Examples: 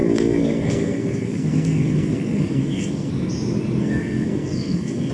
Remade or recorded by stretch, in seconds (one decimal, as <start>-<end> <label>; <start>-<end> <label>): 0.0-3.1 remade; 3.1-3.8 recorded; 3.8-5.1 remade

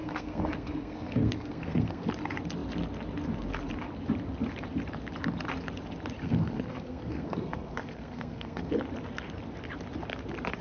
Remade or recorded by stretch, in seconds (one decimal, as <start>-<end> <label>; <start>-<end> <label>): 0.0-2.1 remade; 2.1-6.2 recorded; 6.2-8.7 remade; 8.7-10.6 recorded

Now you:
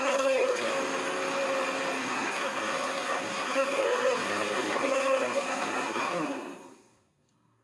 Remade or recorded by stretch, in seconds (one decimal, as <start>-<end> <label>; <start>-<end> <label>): 0.0-0.7 remade; 0.7-2.0 recorded; 2.0-7.6 remade

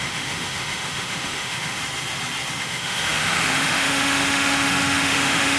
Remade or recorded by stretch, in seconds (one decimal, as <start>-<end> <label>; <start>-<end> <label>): 0.0-1.8 remade; 1.8-2.6 recorded; 2.6-5.6 remade